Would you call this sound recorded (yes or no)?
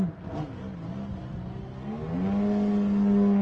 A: yes